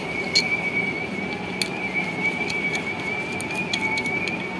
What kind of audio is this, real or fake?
real